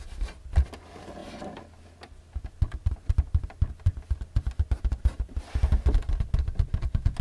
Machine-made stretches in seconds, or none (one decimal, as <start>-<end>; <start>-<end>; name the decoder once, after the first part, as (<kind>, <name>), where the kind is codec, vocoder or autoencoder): none